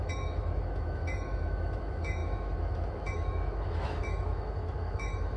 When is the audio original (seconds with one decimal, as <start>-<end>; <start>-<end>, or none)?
none